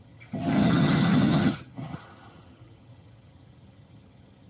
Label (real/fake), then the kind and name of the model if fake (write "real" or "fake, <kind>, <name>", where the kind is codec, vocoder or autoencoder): fake, vocoder, HiFi-GAN